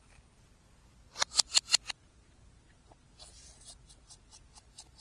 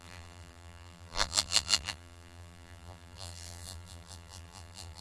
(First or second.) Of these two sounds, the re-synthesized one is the second